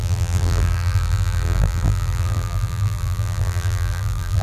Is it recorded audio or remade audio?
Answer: remade